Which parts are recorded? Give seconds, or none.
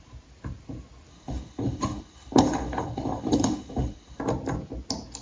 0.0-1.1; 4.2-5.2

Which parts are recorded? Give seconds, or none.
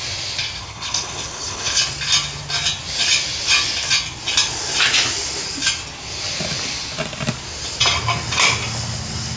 0.0-0.6; 1.8-9.4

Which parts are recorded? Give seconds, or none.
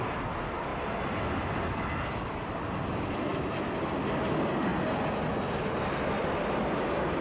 0.0-7.2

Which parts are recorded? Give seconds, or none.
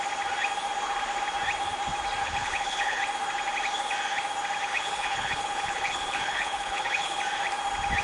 0.0-2.2; 3.0-4.7; 7.2-8.0